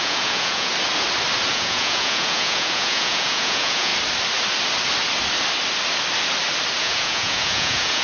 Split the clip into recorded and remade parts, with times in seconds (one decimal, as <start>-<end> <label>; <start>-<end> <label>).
0.0-0.7 remade; 0.7-1.5 recorded; 1.5-3.9 remade; 3.9-6.8 recorded; 6.8-8.0 remade